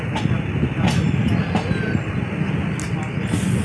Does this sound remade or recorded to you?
recorded